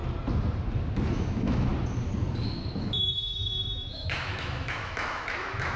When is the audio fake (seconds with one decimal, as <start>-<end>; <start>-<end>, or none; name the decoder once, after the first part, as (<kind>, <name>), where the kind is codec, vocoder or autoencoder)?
1.1-1.7 (autoencoder, DAC-VAE); 2.8-5.8